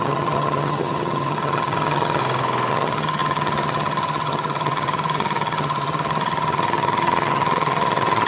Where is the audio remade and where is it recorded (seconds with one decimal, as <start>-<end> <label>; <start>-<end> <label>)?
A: 0.0-2.2 remade; 2.2-2.7 recorded; 2.7-8.3 remade